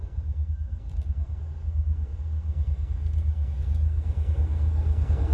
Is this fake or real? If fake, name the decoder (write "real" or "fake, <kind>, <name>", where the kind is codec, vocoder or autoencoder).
fake, codec, SNAC